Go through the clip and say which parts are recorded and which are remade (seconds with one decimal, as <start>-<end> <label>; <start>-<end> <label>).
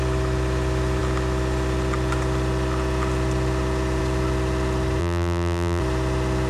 0.0-5.0 recorded; 5.0-5.8 remade; 5.8-6.5 recorded